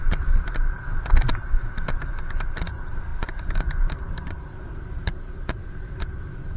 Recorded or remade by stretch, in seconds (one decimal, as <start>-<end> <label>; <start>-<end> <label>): 0.0-3.1 recorded; 3.1-4.0 remade; 4.0-6.6 recorded

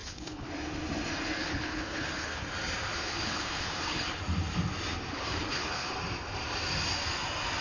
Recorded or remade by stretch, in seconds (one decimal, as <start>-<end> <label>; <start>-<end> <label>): 0.0-0.5 remade; 0.5-1.4 recorded; 1.4-2.4 remade; 2.4-2.9 recorded; 2.9-4.2 remade; 4.2-5.1 recorded; 5.1-5.9 remade; 5.9-7.6 recorded

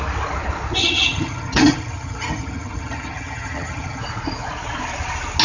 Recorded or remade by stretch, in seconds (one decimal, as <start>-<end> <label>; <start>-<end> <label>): 0.0-0.8 recorded; 0.8-4.0 remade; 4.0-5.4 recorded

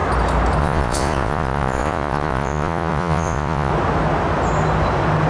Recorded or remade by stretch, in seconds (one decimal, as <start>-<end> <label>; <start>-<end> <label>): 0.0-0.6 recorded; 0.6-3.7 remade; 3.7-5.3 recorded

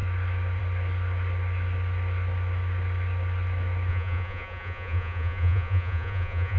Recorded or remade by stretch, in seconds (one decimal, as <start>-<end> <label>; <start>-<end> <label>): 0.0-3.9 recorded; 3.9-6.6 remade

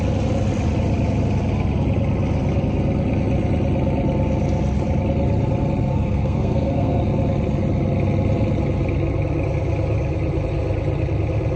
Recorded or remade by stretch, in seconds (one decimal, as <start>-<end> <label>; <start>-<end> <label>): 0.0-5.9 recorded; 5.9-7.0 remade; 7.0-11.6 recorded

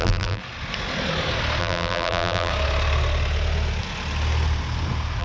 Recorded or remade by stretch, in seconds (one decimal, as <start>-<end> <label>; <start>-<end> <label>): 0.0-0.4 remade; 0.4-1.6 recorded; 1.6-2.5 remade; 2.5-5.2 recorded

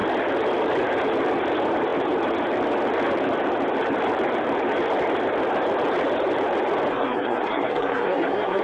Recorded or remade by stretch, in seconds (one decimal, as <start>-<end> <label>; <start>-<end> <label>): 0.0-6.9 recorded; 6.9-8.6 remade